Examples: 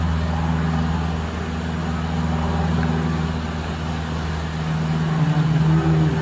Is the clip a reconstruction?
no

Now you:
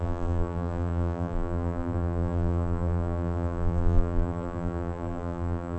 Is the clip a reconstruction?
yes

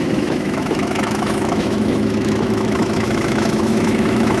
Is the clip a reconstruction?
yes